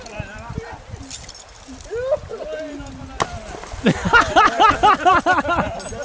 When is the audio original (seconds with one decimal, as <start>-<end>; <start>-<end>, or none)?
0.0-6.0